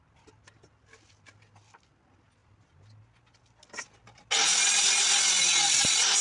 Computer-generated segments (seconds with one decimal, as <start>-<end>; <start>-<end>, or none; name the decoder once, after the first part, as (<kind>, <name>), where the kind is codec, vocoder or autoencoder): none